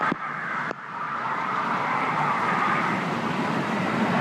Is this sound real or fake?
fake